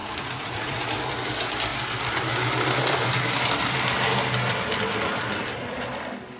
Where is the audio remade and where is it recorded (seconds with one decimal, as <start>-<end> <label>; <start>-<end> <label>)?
0.0-0.8 remade; 0.8-6.4 recorded